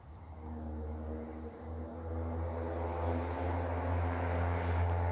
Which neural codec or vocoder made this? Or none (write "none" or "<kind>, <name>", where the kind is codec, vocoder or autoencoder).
none